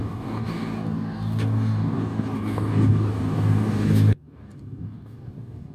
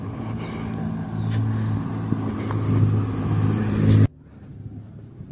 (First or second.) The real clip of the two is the second